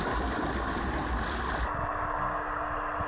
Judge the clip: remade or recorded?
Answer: recorded